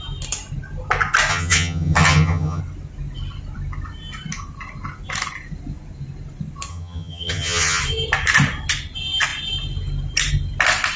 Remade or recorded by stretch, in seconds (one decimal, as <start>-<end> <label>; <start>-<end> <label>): 0.0-1.3 recorded; 1.3-2.6 remade; 2.6-6.7 recorded; 6.7-7.8 remade; 7.8-11.0 recorded